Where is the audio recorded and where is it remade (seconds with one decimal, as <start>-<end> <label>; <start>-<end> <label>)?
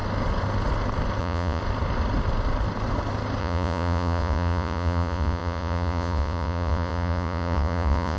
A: 0.0-1.2 recorded; 1.2-1.6 remade; 1.6-3.4 recorded; 3.4-8.2 remade